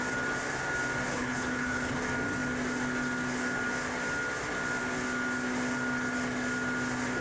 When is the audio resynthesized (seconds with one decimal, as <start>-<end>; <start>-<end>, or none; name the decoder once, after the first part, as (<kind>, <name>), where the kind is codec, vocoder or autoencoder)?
1.1-1.9 (codec, HILCodec)